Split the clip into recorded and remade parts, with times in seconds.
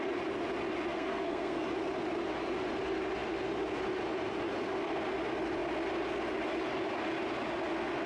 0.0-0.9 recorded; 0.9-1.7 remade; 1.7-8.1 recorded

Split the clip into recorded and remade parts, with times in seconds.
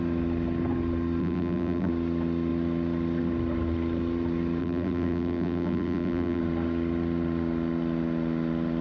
0.0-1.2 recorded; 1.2-1.9 remade; 1.9-4.6 recorded; 4.6-6.4 remade; 6.4-8.8 recorded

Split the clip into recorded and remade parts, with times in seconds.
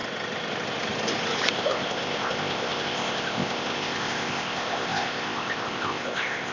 0.0-1.5 recorded; 1.5-6.5 remade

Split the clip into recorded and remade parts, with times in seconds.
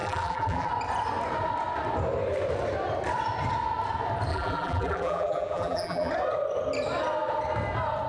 0.0-0.7 remade; 0.7-4.3 recorded; 4.3-6.1 remade; 6.1-8.1 recorded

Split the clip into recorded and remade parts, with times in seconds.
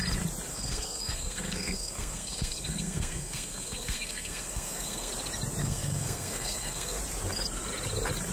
0.0-0.5 recorded; 0.5-5.1 remade; 5.1-5.6 recorded; 5.6-7.0 remade; 7.0-8.3 recorded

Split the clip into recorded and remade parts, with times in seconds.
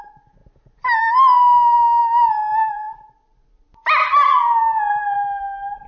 0.0-5.9 recorded